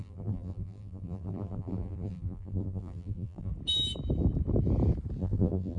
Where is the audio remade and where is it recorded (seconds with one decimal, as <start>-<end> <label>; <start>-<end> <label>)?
0.0-3.5 remade; 3.5-5.2 recorded; 5.2-5.8 remade